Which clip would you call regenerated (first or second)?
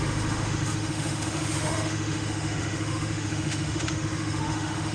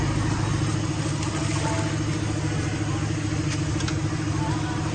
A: first